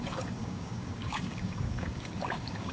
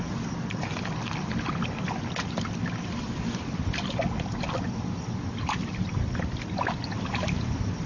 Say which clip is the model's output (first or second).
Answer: first